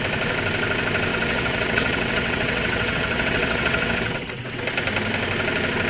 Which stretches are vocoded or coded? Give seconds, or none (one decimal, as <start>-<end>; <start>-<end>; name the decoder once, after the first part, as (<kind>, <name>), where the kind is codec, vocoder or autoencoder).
1.1-4.6 (vocoder, WaveNeXt)